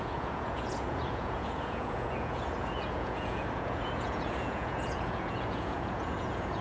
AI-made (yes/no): yes